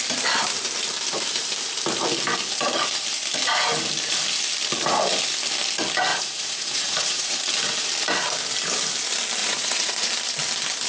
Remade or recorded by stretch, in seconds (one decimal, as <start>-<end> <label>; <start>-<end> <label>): 0.0-6.1 recorded; 6.1-7.4 remade; 7.4-9.4 recorded; 9.4-10.1 remade; 10.1-10.9 recorded